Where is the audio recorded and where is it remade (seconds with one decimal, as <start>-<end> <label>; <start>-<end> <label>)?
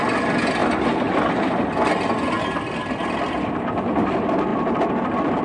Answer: 0.0-5.4 recorded